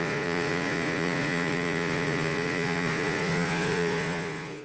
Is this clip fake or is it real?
fake